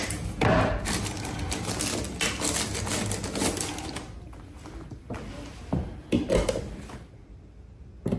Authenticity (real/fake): real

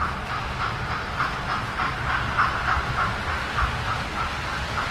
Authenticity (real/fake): real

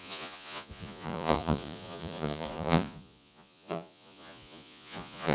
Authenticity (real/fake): fake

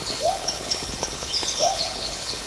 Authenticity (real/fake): fake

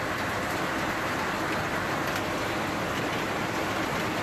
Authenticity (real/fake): real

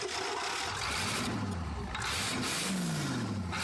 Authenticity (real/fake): real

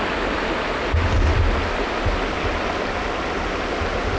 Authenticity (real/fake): real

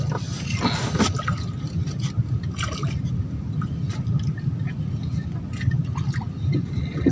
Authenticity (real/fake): real